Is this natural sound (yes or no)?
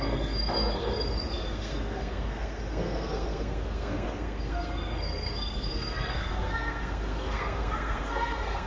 no